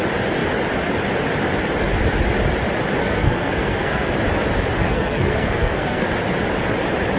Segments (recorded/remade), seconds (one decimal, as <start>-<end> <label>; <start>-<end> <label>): 0.0-3.0 recorded; 3.0-4.1 remade; 4.1-4.8 recorded; 4.8-6.1 remade; 6.1-7.2 recorded